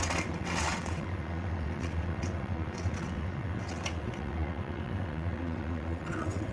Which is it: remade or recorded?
remade